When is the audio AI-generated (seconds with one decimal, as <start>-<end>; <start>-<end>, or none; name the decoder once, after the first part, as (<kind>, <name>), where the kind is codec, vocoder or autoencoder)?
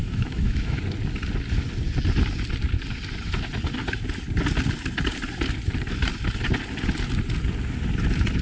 0.0-0.8 (autoencoder, DAC-VAE)